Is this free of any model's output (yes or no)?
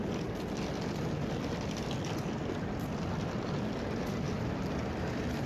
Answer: yes